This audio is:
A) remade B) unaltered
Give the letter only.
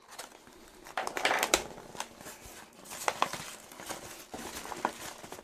B